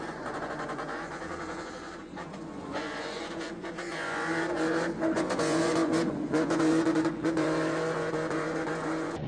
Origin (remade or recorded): remade